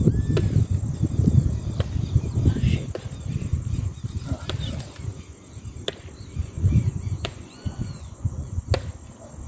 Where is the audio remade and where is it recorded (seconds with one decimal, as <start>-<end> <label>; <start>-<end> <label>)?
0.0-6.4 recorded; 6.4-8.6 remade; 8.6-9.5 recorded